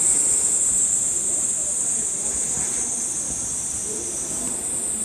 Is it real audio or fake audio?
real